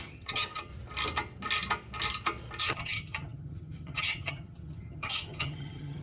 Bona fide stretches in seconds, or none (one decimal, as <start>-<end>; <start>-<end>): 0.7-2.6